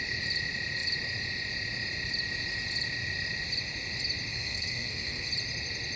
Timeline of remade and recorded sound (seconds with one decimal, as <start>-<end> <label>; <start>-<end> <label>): 0.0-4.3 recorded; 4.3-5.3 remade; 5.3-6.0 recorded